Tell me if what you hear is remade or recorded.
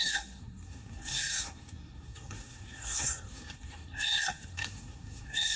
remade